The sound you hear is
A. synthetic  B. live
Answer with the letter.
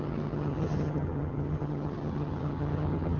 A